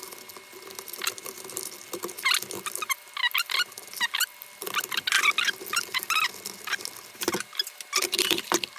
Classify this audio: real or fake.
real